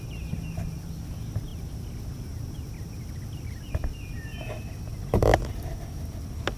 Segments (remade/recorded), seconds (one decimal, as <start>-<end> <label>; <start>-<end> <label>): 0.0-6.6 recorded